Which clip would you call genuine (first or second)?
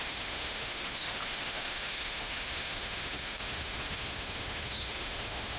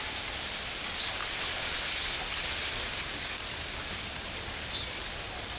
second